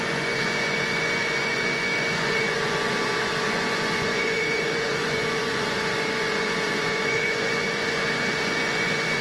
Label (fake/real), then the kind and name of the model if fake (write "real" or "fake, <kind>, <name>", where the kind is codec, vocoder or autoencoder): fake, vocoder, Vocos